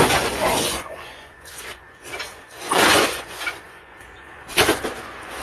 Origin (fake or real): fake